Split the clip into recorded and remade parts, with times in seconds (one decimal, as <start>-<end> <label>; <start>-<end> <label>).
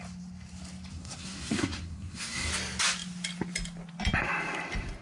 0.0-0.9 recorded; 0.9-2.5 remade; 2.5-5.0 recorded